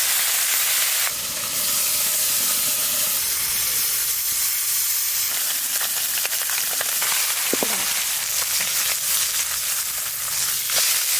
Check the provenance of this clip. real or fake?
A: real